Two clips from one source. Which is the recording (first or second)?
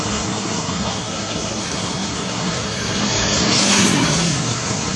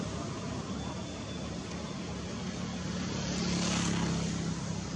second